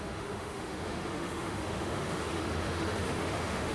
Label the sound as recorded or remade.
remade